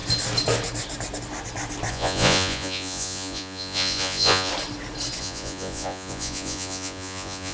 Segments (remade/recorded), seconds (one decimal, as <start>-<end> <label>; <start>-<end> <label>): 0.0-1.9 recorded; 1.9-4.5 remade; 4.5-5.2 recorded; 5.2-7.5 remade